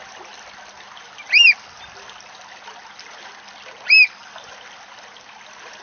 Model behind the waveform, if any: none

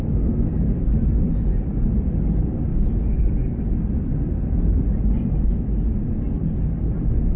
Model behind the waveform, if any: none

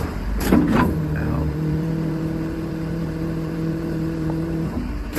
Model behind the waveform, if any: vocoder, BigVGAN v2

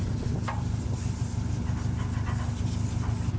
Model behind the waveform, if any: none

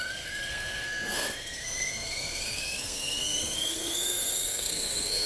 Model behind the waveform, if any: codec, SNAC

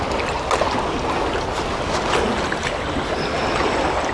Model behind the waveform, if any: none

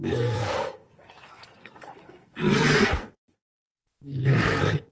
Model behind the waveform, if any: codec, SNAC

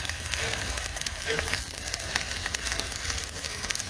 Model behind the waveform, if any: codec, SNAC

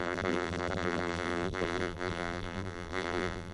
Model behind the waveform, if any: vocoder, BigVGAN v2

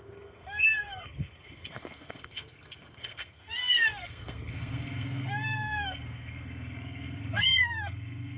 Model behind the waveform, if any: codec, SNAC